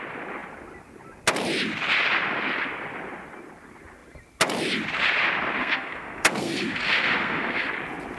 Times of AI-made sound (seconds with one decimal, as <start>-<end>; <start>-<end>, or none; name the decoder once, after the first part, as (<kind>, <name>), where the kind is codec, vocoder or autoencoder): 5.6-7.7 (codec, SNAC)

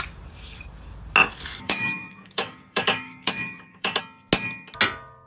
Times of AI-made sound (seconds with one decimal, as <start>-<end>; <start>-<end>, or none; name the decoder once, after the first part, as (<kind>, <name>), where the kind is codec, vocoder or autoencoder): 1.2-4.0 (codec, DAC)

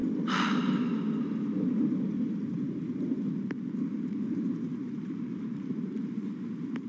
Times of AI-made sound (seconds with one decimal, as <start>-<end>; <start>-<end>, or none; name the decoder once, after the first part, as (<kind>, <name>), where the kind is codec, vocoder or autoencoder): 3.9-6.9 (vocoder, BigVGAN v2)

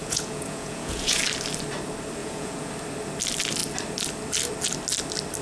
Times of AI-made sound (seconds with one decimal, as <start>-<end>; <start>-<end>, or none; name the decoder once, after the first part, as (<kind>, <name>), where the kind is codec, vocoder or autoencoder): 0.0-1.2 (vocoder, Vocos); 2.2-2.7

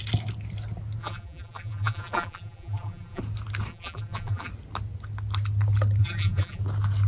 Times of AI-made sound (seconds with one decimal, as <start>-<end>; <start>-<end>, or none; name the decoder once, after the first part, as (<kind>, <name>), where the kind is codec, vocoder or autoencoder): 1.0-3.2 (vocoder, BigVGAN v2); 3.7-4.5; 6.0-6.6

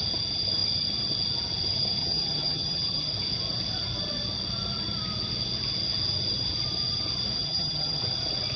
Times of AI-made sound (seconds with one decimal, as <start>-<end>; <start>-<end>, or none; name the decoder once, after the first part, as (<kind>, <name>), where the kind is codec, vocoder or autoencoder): 2.0-3.1 (vocoder, HiFi-GAN); 7.4-8.0